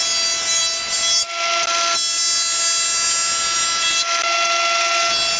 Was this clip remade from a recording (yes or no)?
no